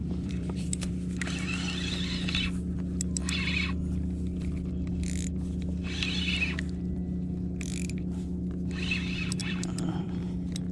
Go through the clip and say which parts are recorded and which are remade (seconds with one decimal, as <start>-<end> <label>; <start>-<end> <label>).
0.0-0.9 remade; 0.9-9.4 recorded; 9.4-10.2 remade; 10.2-10.7 recorded